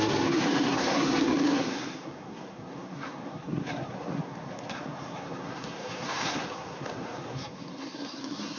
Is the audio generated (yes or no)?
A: yes